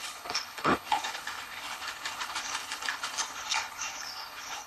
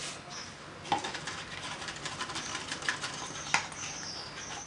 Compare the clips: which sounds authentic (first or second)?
second